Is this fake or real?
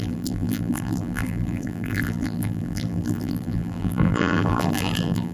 fake